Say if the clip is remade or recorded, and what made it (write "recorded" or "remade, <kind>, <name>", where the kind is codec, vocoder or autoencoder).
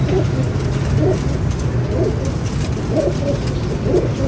recorded